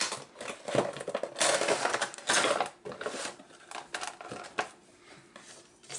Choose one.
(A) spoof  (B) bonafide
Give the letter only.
B